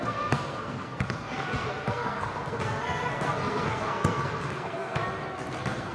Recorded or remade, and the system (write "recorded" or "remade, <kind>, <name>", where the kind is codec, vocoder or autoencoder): remade, codec, SNAC